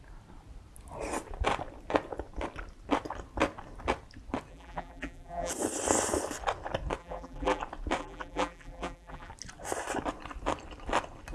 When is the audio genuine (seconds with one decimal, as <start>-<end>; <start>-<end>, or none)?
0.0-4.5; 5.5-7.0; 7.6-8.0; 9.3-11.3